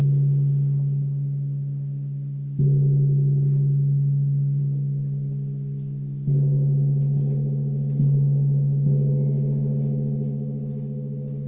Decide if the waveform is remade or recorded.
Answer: recorded